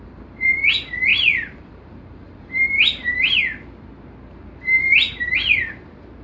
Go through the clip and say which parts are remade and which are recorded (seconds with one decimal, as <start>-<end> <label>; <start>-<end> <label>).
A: 0.0-1.1 recorded; 1.1-3.4 remade; 3.4-6.2 recorded